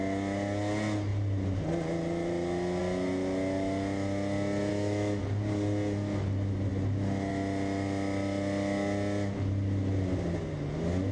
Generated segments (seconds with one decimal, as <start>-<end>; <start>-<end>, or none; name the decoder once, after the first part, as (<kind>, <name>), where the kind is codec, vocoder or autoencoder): 4.7-5.2 (autoencoder, DAC-VAE)

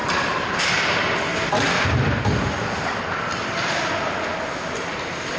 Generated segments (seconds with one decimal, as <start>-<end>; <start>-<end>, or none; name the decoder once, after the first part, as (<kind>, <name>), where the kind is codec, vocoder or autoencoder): 0.0-0.6 (vocoder, BigVGAN v2); 1.3-3.8

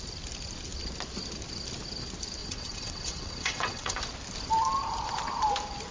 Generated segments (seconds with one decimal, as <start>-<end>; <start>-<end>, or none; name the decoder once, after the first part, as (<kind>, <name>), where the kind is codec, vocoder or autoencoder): 2.4-4.0 (vocoder, WaveNeXt)

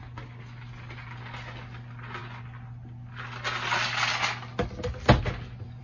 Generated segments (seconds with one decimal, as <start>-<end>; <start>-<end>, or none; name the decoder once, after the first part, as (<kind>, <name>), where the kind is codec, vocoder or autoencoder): none

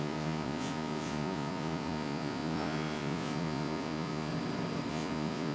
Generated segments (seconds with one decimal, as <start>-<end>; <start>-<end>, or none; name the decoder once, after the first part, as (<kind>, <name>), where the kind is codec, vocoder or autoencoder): 0.0-4.3 (vocoder, Vocos); 4.9-5.5

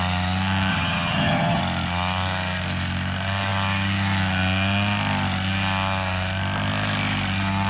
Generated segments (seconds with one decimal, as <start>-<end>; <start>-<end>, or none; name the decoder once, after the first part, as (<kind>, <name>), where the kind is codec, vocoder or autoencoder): 0.7-1.6 (vocoder, HiFi-GAN)

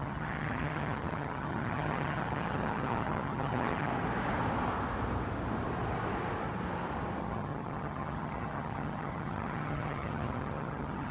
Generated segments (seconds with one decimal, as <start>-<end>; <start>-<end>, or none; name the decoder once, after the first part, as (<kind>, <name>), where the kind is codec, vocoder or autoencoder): 0.0-3.9 (vocoder, HiFi-GAN); 7.2-11.1